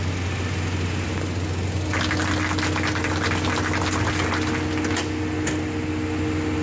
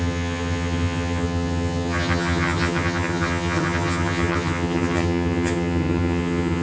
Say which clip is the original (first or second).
first